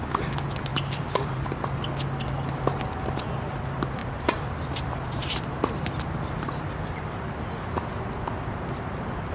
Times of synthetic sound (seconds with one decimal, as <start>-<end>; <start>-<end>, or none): 0.7-1.4; 4.0-5.6